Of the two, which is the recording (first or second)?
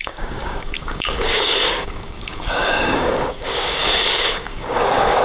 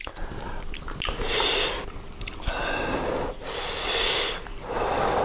second